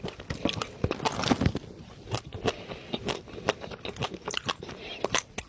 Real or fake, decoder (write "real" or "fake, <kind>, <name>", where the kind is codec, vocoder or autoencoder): real